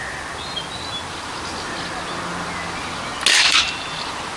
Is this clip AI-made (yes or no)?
no